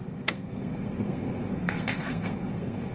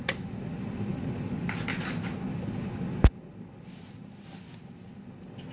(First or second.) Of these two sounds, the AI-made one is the first